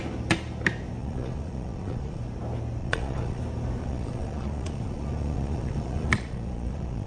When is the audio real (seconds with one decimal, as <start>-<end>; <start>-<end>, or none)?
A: 0.0-1.0; 2.2-2.8; 3.4-3.8

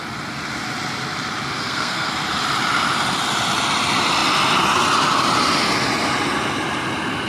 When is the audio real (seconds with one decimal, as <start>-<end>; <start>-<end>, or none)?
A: 0.0-1.6; 2.1-7.3

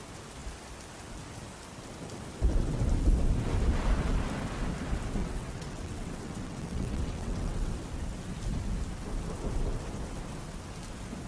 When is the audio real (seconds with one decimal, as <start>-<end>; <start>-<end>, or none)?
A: 0.0-5.2; 7.7-11.3

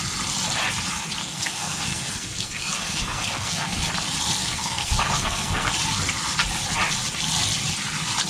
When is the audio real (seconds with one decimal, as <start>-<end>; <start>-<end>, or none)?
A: 0.0-1.2; 3.9-4.4; 5.7-8.3

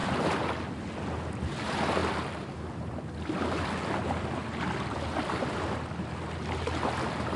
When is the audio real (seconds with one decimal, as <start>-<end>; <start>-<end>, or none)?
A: 0.0-2.0; 6.1-7.4